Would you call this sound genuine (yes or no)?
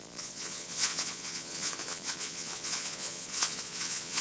no